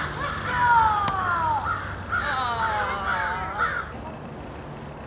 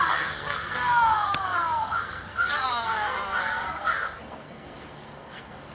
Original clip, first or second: first